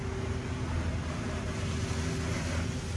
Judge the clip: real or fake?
real